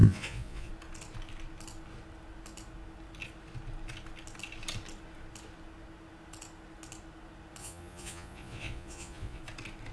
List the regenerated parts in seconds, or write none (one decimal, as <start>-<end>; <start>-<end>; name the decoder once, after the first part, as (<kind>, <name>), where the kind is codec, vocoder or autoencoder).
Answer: 0.0-0.7 (vocoder, Vocos); 7.6-9.4